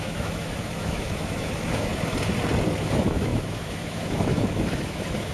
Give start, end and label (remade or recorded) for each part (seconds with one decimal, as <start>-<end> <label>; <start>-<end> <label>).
0.0-1.9 remade; 1.9-2.8 recorded; 2.8-5.3 remade